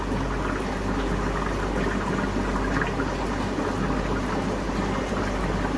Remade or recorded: recorded